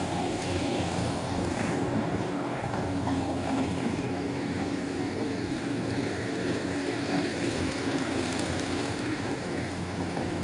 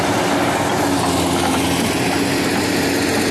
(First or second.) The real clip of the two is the second